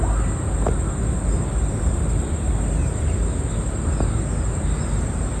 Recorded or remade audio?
recorded